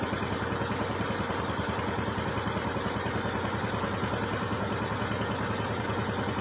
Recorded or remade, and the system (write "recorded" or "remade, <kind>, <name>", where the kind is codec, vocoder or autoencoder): recorded